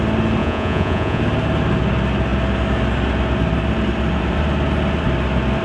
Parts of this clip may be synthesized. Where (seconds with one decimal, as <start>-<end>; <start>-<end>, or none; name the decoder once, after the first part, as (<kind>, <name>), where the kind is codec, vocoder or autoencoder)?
0.4-1.2 (vocoder, Vocos)